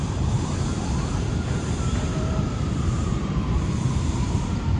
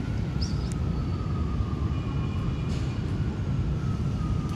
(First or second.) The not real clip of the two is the first